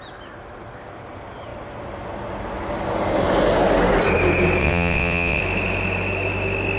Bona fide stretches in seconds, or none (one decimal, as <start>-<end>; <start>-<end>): 0.0-4.6; 5.4-6.8